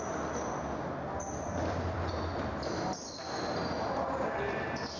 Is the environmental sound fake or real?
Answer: real